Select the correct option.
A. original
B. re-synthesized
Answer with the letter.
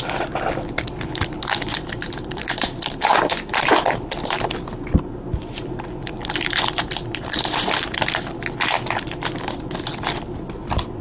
B